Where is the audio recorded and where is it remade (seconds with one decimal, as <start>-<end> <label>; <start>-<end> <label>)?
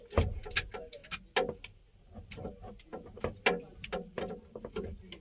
0.0-5.2 recorded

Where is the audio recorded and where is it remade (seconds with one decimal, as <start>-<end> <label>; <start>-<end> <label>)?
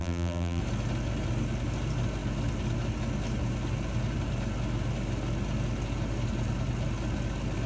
0.0-0.6 remade; 0.6-7.7 recorded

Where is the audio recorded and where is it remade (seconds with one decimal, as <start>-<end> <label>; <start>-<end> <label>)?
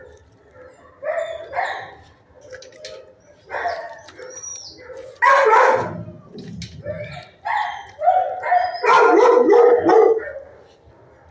0.0-11.3 recorded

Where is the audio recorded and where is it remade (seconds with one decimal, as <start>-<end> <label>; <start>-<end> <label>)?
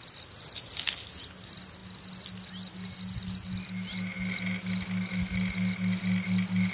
0.0-6.7 recorded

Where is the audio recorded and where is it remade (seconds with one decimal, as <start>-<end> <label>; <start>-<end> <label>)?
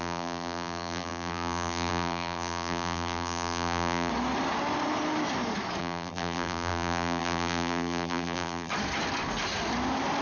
0.0-4.1 remade; 4.1-5.8 recorded; 5.8-8.7 remade; 8.7-10.2 recorded